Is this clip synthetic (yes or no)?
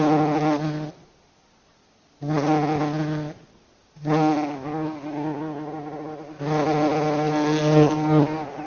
no